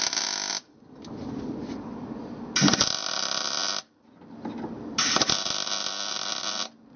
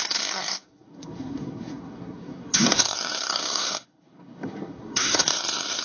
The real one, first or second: first